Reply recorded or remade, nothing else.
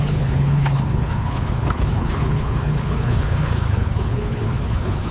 remade